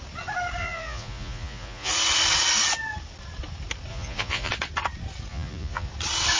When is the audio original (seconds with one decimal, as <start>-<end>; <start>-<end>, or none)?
0.0-0.6; 1.9-3.9; 4.5-5.3; 5.9-6.4